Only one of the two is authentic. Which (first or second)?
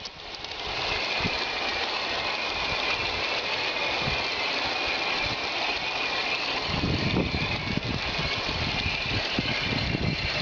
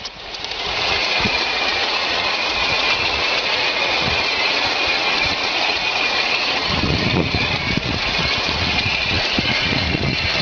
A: first